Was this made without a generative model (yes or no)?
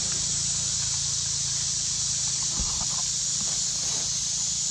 yes